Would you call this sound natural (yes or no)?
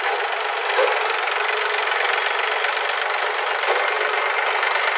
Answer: yes